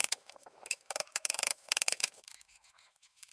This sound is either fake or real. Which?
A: fake